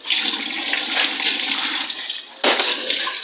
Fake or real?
real